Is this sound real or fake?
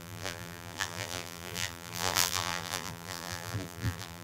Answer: fake